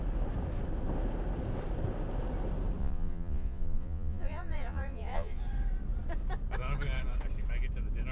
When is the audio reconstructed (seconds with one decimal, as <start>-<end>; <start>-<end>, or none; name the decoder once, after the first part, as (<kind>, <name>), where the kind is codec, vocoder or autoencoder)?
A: 2.8-5.4 (vocoder, Vocos)